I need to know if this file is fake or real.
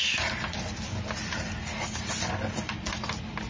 real